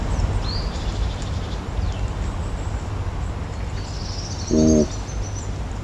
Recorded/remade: recorded